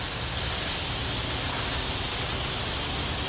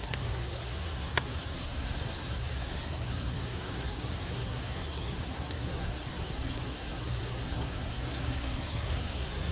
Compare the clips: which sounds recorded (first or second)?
first